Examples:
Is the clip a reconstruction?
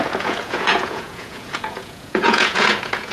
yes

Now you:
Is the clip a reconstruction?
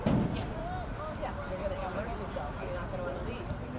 no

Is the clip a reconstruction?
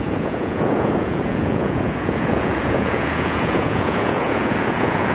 yes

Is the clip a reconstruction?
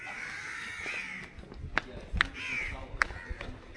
no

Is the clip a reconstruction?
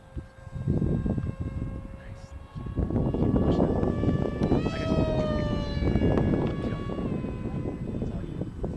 no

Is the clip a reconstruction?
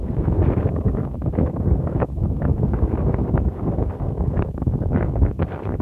yes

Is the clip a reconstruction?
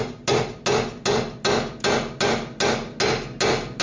no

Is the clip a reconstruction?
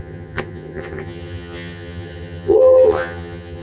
yes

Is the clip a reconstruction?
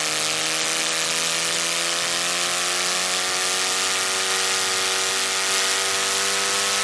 no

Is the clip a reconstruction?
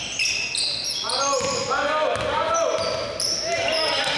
no